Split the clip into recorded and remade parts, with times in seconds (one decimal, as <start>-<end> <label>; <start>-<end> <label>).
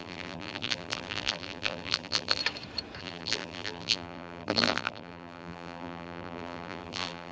0.0-2.4 remade; 2.4-3.0 recorded; 3.0-7.3 remade